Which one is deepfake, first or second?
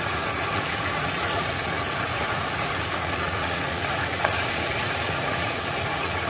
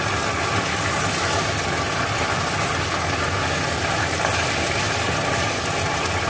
first